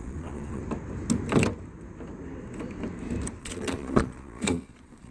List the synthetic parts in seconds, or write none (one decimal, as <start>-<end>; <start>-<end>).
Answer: 0.0-0.6; 3.4-5.1